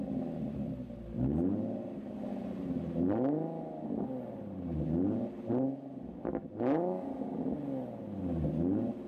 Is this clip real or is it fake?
real